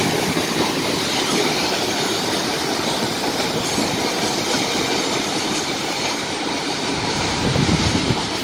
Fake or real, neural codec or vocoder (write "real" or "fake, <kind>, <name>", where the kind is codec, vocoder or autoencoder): fake, vocoder, BigVGAN v2